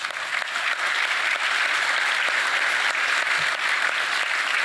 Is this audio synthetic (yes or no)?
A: no